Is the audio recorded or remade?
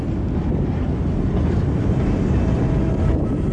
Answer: recorded